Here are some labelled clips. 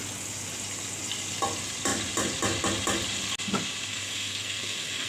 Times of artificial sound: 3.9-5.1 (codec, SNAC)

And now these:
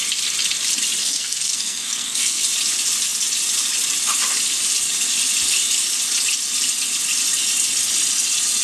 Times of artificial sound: 1.0-2.4 (codec, SNAC)